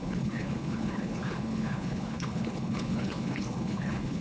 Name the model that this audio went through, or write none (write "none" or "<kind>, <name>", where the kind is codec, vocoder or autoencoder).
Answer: codec, HILCodec